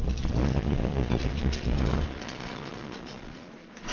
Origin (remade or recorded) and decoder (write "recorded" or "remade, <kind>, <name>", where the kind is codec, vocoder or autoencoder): remade, vocoder, Vocos